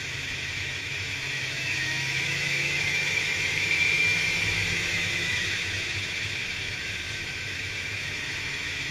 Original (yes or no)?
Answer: no